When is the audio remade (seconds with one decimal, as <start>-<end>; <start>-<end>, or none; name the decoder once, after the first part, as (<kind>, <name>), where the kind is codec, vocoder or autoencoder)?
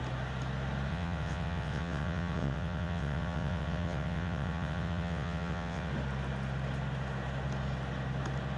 0.9-5.9 (vocoder, WaveNeXt)